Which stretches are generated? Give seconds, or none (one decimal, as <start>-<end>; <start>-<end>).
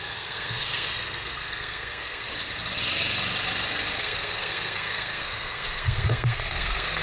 0.0-2.3; 4.0-7.0